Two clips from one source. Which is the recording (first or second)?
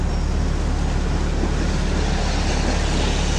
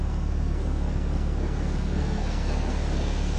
first